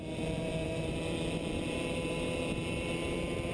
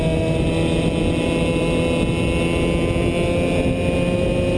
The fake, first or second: first